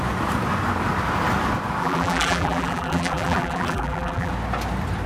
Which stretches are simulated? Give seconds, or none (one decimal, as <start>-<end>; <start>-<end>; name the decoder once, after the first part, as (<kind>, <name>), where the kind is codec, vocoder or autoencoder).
1.8-4.3 (vocoder, BigVGAN v2)